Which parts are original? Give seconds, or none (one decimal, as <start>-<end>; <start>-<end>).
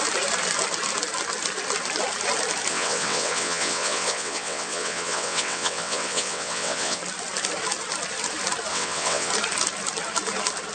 0.0-2.7; 7.0-8.7; 9.3-10.7